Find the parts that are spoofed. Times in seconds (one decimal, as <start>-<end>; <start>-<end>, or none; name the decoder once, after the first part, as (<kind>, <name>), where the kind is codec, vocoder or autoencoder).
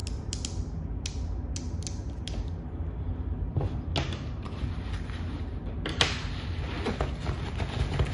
none